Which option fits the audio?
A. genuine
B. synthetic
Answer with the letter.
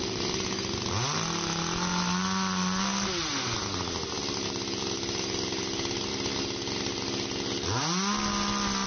A